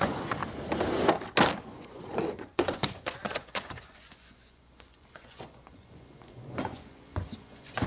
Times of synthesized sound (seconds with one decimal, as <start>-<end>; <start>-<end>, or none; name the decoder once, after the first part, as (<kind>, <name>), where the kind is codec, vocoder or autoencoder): 0.0-0.4 (vocoder, Vocos); 1.6-7.9